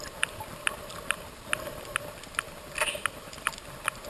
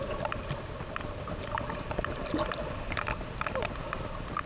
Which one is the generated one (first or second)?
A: second